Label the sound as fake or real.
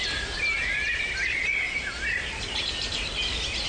real